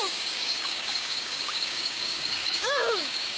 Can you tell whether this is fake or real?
fake